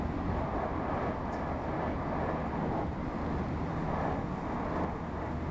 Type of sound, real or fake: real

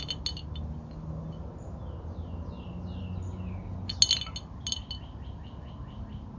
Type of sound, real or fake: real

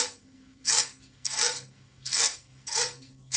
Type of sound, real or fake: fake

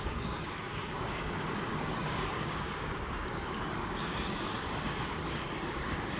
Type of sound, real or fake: fake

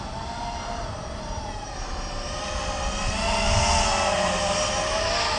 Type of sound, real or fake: real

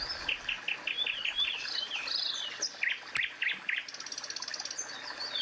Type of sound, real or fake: real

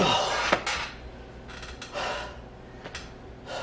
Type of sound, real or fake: real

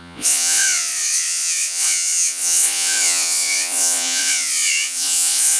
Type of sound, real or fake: fake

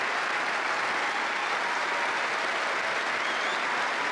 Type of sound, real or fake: real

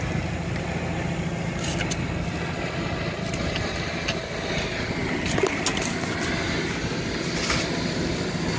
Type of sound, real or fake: real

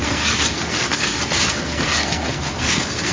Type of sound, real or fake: fake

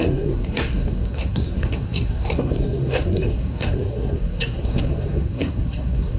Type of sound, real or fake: fake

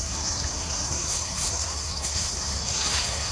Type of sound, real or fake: fake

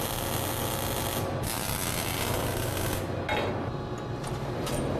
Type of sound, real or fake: real